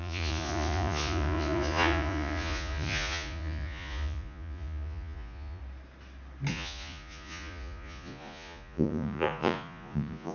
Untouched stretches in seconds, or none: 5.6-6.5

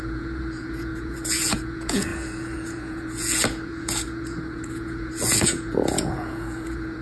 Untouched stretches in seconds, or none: none

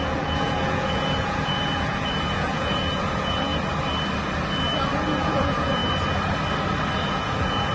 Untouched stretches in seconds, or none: 3.5-4.9; 5.8-7.1

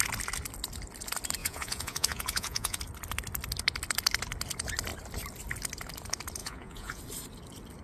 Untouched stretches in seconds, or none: 0.0-1.4; 2.8-6.4; 7.0-7.8

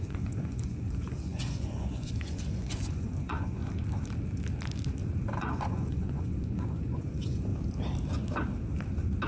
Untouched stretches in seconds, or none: 3.6-5.4; 7.5-9.3

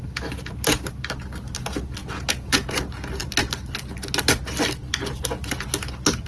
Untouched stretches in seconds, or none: 0.0-2.0; 2.8-6.3

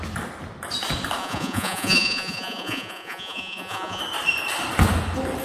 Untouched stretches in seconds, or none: 0.0-1.2; 4.0-5.4